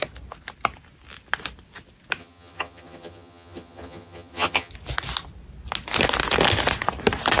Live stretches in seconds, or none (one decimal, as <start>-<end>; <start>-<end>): 0.0-2.2; 4.7-7.4